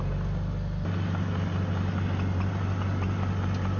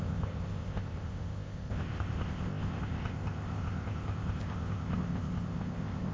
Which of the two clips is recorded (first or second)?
first